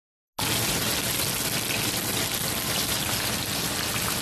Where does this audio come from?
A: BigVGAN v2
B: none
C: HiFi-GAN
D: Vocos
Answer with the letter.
B